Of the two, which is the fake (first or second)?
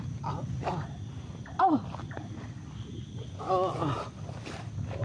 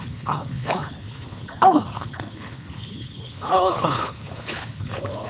second